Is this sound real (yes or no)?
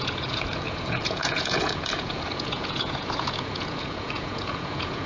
no